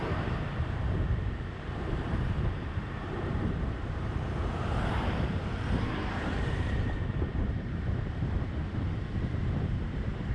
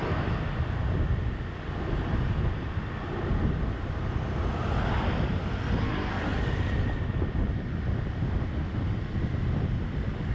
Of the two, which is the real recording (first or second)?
second